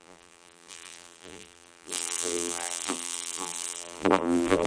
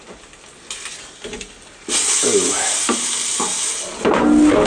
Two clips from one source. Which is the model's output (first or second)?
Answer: first